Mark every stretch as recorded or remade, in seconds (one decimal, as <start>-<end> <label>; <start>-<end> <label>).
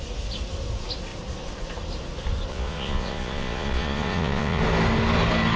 0.0-2.5 recorded; 2.5-4.6 remade; 4.6-5.6 recorded